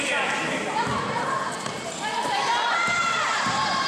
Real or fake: fake